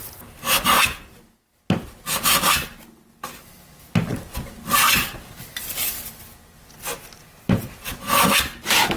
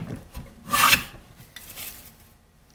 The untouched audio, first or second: first